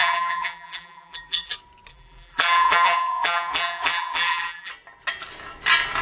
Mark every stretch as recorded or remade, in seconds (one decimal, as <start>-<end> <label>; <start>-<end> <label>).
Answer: 0.0-1.5 remade; 1.5-1.9 recorded; 1.9-4.7 remade; 4.7-6.0 recorded